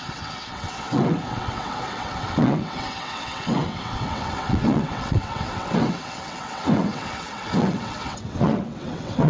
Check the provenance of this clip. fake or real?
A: fake